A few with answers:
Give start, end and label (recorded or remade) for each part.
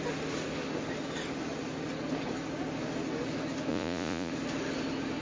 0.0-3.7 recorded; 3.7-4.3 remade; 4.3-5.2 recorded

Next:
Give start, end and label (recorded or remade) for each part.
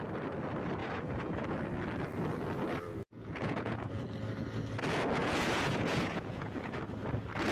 0.0-0.8 recorded; 0.8-1.4 remade; 1.4-2.9 recorded; 2.9-4.0 remade; 4.0-5.2 recorded; 5.2-6.8 remade; 6.8-7.5 recorded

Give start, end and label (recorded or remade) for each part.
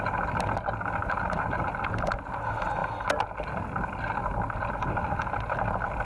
0.0-6.0 recorded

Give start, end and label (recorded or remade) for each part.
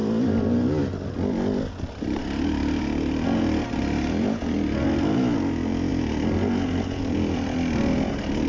0.0-8.5 recorded